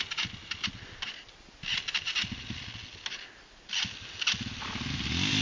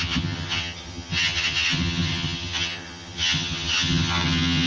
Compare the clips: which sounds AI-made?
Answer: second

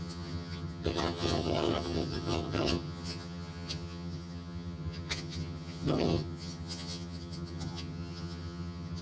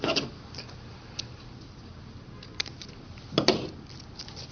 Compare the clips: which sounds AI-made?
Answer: first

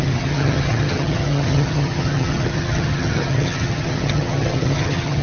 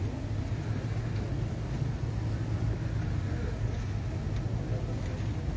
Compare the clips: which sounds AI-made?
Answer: first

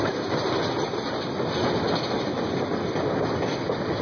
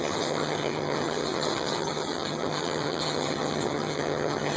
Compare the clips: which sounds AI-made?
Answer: second